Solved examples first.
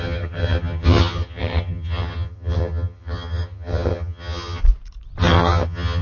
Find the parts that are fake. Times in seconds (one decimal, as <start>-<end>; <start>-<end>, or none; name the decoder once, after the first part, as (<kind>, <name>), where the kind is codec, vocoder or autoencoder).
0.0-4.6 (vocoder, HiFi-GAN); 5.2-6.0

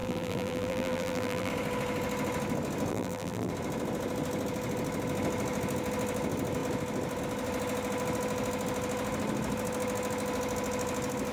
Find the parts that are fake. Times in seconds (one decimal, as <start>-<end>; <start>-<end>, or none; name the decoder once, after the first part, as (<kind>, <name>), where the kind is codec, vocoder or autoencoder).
0.0-1.5 (vocoder, BigVGAN v2); 2.9-3.5

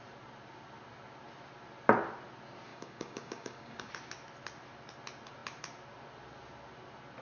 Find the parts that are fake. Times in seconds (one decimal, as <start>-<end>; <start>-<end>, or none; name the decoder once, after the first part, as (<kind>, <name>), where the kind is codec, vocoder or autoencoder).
2.7-3.9 (codec, DAC)

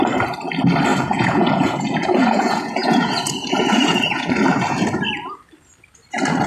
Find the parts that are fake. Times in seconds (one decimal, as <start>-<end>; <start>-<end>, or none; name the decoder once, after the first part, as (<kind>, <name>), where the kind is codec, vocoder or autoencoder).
0.9-4.3 (vocoder, Vocos)

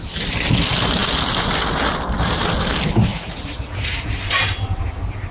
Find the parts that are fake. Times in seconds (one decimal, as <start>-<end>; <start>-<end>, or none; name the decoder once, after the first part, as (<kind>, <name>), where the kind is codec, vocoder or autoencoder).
3.1-4.1 (vocoder, Vocos)

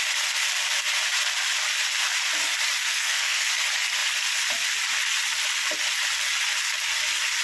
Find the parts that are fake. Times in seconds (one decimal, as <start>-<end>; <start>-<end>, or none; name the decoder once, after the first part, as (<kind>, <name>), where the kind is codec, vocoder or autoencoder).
2.8-3.5 (codec, SNAC)

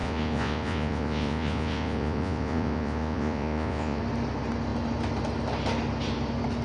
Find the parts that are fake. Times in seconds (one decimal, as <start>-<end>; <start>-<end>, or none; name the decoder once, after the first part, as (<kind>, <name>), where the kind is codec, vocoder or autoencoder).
0.0-4.0 (vocoder, Vocos)

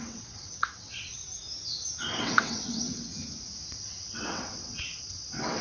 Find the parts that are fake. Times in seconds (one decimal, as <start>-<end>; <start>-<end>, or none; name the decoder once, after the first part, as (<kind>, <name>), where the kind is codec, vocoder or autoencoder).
0.0-1.2 (vocoder, WaveNeXt); 2.2-3.1; 3.7-5.6